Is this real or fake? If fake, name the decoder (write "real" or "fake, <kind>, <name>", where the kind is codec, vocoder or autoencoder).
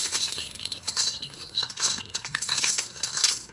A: fake, codec, SNAC